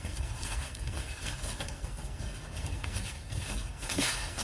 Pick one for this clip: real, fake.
fake